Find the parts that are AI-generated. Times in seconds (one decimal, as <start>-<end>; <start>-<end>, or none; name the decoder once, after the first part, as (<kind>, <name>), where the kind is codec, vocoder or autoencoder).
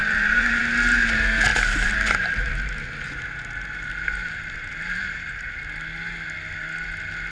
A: 0.0-0.6 (vocoder, BigVGAN v2); 1.5-5.5